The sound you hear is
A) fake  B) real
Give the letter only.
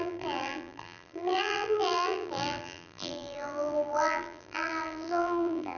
A